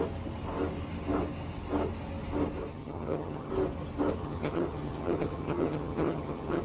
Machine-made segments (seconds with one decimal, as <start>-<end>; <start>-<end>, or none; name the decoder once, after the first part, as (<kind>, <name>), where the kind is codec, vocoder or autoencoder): 2.7-3.5 (vocoder, HiFi-GAN); 4.2-6.6